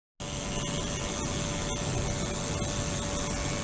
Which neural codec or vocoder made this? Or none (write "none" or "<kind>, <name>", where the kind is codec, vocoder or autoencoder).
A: none